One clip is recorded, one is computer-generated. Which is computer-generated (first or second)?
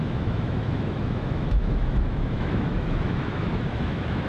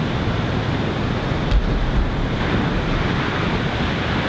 first